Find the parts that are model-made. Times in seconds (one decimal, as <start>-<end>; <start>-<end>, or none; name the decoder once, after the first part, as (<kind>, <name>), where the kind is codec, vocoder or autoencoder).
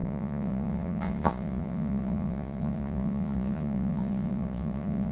0.0-5.1 (vocoder, Vocos)